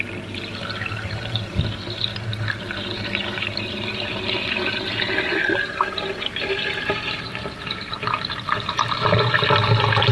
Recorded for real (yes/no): no